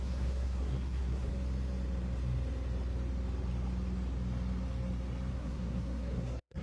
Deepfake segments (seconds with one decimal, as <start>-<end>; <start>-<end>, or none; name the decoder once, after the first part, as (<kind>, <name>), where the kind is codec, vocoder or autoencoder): 0.0-1.3 (codec, SNAC); 5.3-6.6